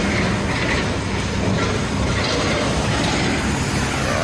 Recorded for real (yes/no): yes